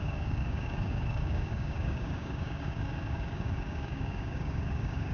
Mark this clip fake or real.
fake